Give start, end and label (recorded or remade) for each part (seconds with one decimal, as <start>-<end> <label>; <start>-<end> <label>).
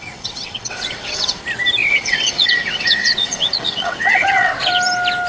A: 0.0-1.4 remade; 1.4-1.9 recorded; 1.9-4.5 remade; 4.5-5.3 recorded